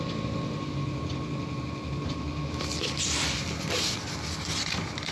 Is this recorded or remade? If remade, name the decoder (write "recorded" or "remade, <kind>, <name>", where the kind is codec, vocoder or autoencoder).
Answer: recorded